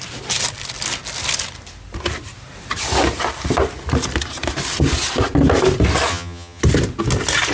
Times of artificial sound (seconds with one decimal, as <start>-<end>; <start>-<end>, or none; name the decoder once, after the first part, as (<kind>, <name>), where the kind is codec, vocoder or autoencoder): 6.1-6.6 (vocoder, HiFi-GAN)